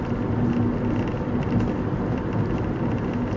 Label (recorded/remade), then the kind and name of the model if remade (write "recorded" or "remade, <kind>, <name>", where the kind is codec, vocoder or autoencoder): recorded